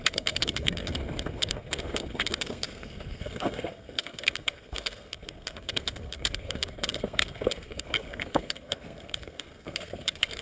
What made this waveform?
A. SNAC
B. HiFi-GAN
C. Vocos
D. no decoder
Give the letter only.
A